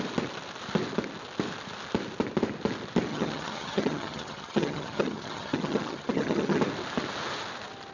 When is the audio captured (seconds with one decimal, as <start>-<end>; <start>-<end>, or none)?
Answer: 0.0-3.1; 6.6-7.9